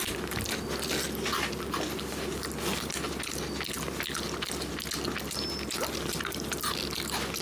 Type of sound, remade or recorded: recorded